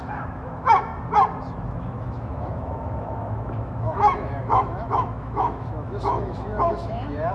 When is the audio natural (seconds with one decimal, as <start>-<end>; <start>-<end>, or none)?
0.9-1.7